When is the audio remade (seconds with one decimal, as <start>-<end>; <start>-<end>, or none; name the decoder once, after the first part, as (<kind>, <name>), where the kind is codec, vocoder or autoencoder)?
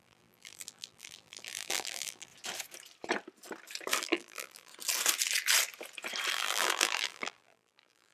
0.0-2.3 (vocoder, BigVGAN v2); 4.0-4.7; 6.3-8.1